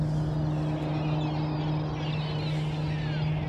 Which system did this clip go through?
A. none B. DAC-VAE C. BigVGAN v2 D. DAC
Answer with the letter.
A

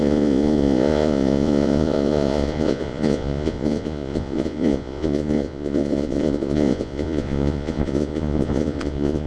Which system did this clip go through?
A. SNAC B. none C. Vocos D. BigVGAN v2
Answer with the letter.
C